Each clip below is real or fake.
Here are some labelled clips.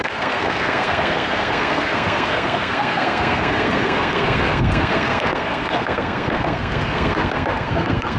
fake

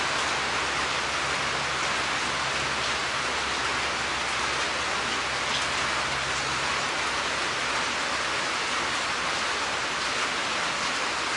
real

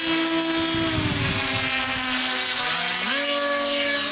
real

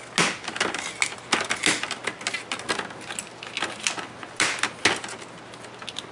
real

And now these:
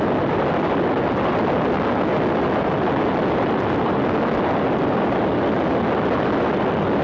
real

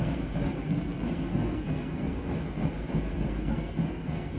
fake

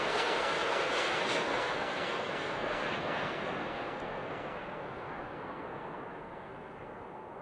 fake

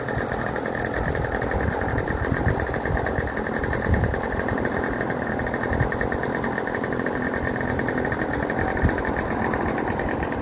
real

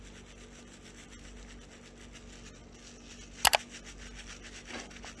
real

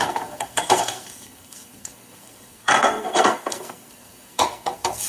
fake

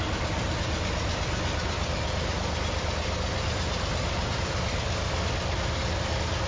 real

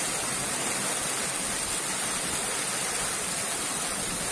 real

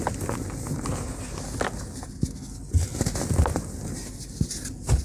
real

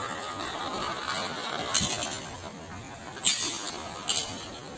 real